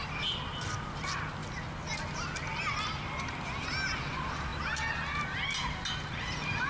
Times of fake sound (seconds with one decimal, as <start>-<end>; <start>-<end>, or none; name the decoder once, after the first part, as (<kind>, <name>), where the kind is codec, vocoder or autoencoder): none